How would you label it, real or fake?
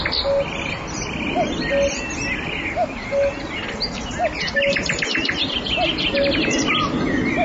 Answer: real